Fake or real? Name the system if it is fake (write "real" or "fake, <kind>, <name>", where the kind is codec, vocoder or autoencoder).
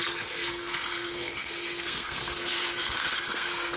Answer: fake, codec, SNAC